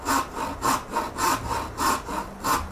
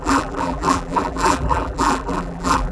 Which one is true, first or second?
first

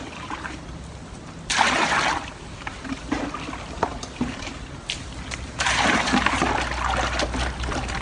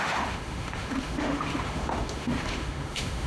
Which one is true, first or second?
first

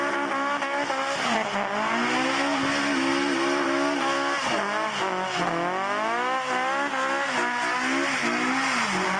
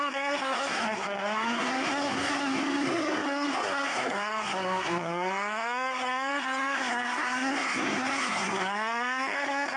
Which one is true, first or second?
first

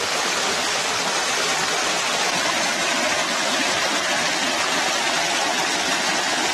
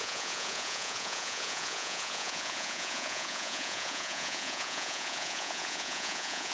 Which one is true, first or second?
first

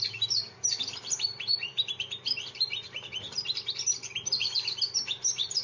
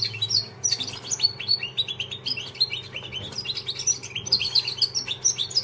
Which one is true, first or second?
second